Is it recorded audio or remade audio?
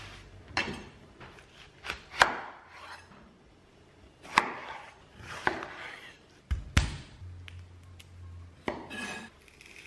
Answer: recorded